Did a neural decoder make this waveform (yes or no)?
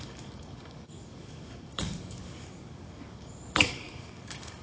yes